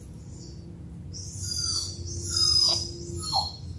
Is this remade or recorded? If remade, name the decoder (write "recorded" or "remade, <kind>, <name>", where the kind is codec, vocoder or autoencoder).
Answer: recorded